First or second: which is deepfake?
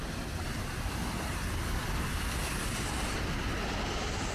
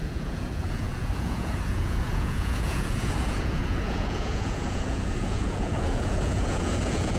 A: second